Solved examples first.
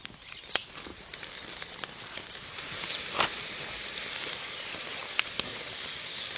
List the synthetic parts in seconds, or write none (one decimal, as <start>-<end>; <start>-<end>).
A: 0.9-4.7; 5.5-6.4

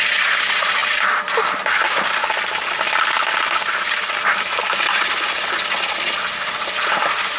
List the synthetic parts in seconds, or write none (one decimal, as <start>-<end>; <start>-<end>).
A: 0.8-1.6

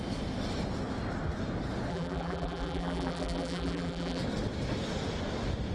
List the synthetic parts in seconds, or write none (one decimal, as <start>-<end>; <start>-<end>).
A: 1.9-4.2

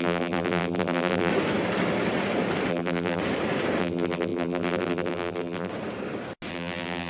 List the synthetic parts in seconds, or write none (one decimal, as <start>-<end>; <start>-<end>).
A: 0.0-1.3; 2.7-3.2; 3.8-5.7; 6.5-7.1

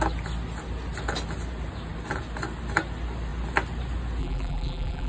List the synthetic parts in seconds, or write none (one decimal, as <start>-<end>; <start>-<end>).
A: 4.2-5.1

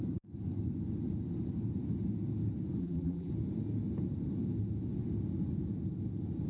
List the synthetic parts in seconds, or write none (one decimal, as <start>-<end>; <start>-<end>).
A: 2.8-3.3

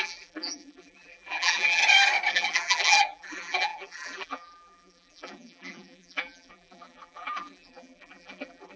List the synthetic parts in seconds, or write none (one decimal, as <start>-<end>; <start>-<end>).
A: 0.0-1.8; 2.3-8.8